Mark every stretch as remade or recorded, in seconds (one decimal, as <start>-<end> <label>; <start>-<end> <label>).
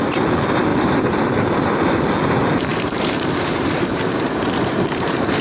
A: 0.0-0.7 recorded; 0.7-1.5 remade; 1.5-2.7 recorded; 2.7-5.4 remade